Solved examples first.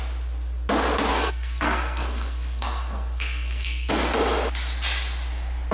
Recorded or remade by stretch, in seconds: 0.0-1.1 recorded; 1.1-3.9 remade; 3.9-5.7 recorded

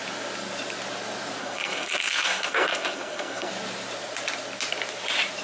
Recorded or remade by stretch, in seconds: 0.0-1.4 recorded; 1.4-3.5 remade; 3.5-5.4 recorded

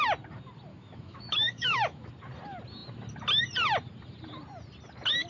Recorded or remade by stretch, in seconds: 0.0-0.7 recorded; 0.7-2.1 remade; 2.1-5.3 recorded

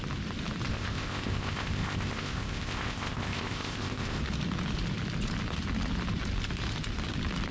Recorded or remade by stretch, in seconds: 0.0-0.7 recorded; 0.7-4.2 remade; 4.2-7.5 recorded

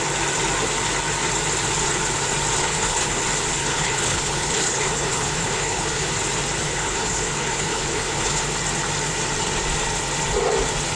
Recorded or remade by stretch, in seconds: 0.0-2.6 recorded; 2.6-3.2 remade; 3.2-3.6 recorded; 3.6-6.1 remade; 6.1-6.6 recorded; 6.6-8.4 remade; 8.4-11.0 recorded

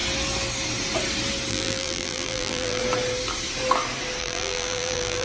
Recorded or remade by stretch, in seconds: 0.0-1.5 recorded; 1.5-2.8 remade; 2.8-4.2 recorded; 4.2-5.2 remade